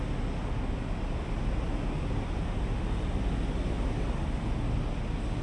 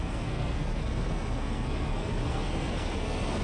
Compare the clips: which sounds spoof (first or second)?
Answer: second